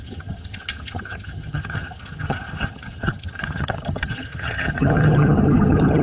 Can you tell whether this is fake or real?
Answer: fake